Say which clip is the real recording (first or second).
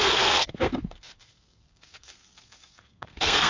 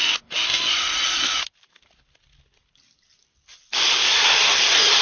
second